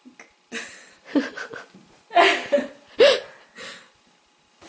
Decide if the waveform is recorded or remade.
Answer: recorded